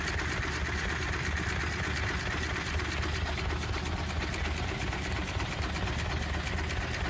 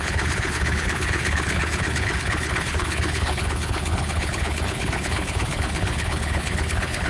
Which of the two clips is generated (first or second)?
second